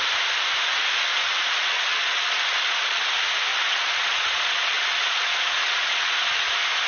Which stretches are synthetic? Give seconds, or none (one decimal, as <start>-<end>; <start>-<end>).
1.1-3.0; 3.5-6.5